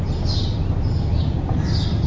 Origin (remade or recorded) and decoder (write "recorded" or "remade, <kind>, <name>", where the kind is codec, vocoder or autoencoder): recorded